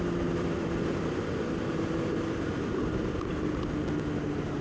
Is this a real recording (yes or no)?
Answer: yes